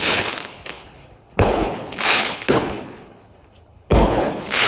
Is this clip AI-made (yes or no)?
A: yes